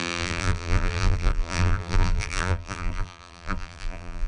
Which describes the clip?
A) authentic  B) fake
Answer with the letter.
B